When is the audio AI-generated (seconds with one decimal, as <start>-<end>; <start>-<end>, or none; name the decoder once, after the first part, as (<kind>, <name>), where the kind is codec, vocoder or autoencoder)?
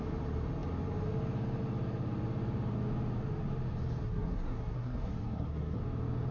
4.0-5.8 (codec, SNAC)